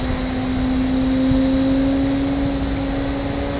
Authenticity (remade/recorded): recorded